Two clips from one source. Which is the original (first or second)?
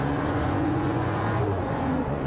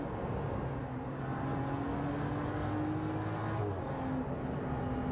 second